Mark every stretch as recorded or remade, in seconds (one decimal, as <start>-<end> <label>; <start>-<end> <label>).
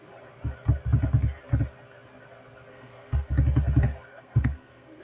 0.0-2.7 recorded; 2.7-3.3 remade; 3.3-4.1 recorded; 4.1-5.0 remade